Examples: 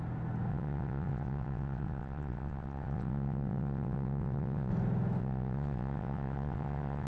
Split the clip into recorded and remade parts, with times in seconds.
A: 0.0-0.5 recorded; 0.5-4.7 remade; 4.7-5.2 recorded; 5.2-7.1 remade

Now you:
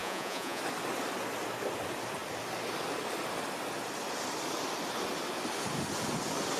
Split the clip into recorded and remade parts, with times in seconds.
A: 0.0-0.6 remade; 0.6-6.6 recorded

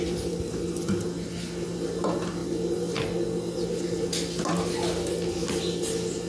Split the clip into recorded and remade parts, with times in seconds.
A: 0.0-6.3 recorded

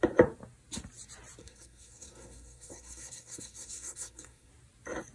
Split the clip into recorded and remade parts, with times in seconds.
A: 0.0-1.4 recorded; 1.4-4.5 remade; 4.5-5.1 recorded

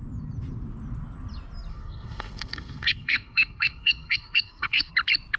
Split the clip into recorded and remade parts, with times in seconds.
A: 0.0-1.7 recorded; 1.7-4.9 remade; 4.9-5.4 recorded